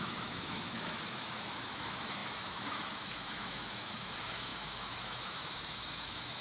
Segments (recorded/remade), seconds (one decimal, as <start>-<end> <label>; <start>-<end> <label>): 0.0-6.4 remade